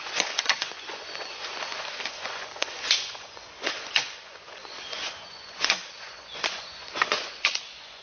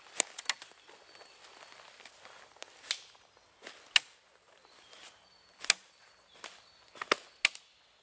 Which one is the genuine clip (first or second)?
second